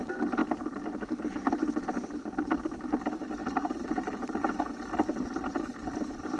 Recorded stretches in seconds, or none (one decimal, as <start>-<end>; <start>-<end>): 0.0-3.4; 4.5-6.4